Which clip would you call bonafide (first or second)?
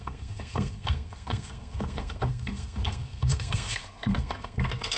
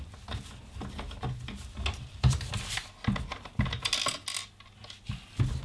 second